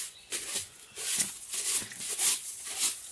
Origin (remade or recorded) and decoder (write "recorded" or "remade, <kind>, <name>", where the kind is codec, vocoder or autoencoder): remade, vocoder, Vocos